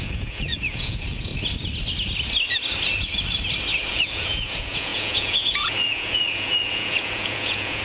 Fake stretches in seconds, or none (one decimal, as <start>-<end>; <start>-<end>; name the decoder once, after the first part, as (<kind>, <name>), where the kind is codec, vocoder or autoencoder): 0.0-1.3 (vocoder, Vocos); 3.9-7.8